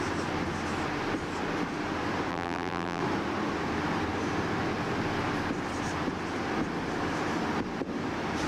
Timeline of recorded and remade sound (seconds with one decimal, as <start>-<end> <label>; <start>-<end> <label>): 0.0-2.3 recorded; 2.3-3.0 remade; 3.0-8.5 recorded